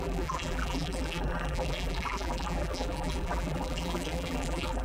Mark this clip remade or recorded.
remade